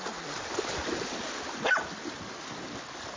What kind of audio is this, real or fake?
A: real